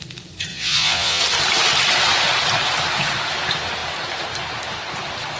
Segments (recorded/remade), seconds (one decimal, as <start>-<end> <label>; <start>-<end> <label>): 0.0-0.5 recorded; 0.5-1.2 remade; 1.2-5.4 recorded

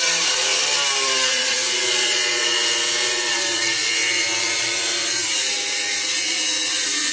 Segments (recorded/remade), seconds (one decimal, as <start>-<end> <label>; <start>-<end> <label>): 0.0-0.5 remade; 0.5-1.3 recorded; 1.3-7.1 remade

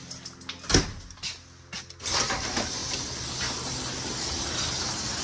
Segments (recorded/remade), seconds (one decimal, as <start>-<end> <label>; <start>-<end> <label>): 0.0-2.8 recorded; 2.8-3.3 remade; 3.3-5.2 recorded

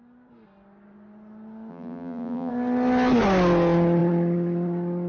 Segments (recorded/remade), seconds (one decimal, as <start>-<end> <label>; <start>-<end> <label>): 0.0-1.7 recorded; 1.7-2.5 remade; 2.5-5.1 recorded

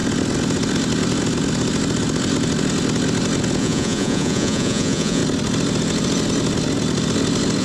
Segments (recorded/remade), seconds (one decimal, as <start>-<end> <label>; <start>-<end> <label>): 0.0-3.6 recorded; 3.6-5.2 remade; 5.2-7.6 recorded